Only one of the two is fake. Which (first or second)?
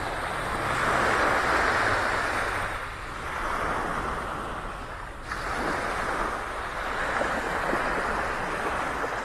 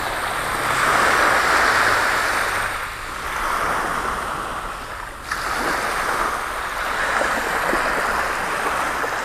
first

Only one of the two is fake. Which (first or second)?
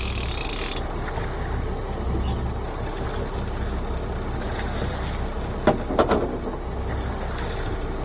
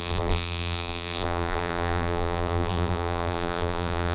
second